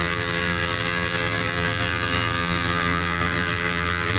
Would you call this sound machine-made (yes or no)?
yes